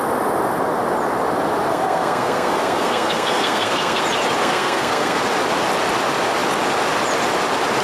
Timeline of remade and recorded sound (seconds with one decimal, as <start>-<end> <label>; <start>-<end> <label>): 0.0-1.7 recorded; 1.7-4.0 remade; 4.0-4.4 recorded; 4.4-5.2 remade; 5.2-7.8 recorded